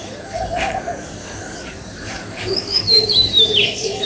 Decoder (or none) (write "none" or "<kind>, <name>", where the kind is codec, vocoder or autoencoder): codec, DAC